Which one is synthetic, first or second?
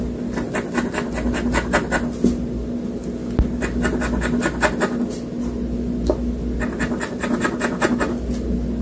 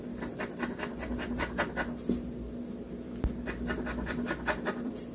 second